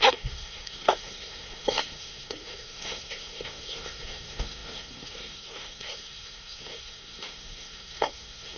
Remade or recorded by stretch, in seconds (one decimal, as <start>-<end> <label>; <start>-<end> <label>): 0.0-8.6 remade